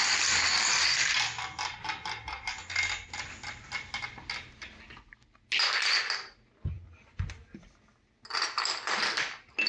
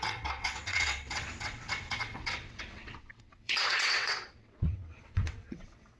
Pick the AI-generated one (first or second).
second